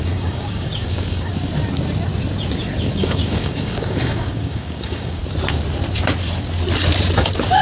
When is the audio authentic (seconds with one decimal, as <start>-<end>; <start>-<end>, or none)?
1.3-2.8; 5.2-7.6